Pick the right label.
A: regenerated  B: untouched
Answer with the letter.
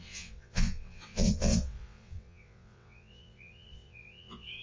A